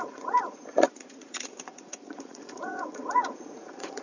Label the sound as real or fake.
fake